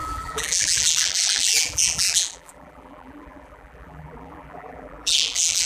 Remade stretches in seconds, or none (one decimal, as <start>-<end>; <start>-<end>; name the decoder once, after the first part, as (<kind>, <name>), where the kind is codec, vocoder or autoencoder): 0.0-5.7 (vocoder, BigVGAN v2)